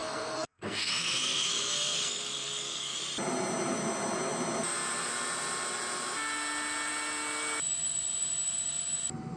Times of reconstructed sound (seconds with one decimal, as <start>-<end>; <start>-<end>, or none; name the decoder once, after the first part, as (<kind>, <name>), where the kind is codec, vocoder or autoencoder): 0.0-3.0 (codec, SNAC)